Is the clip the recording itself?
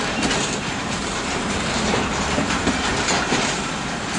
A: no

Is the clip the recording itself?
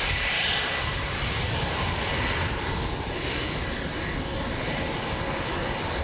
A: yes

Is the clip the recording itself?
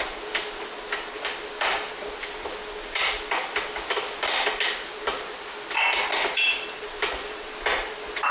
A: yes